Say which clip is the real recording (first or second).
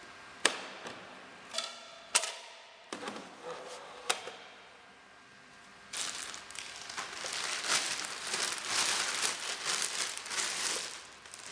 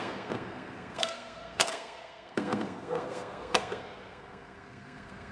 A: first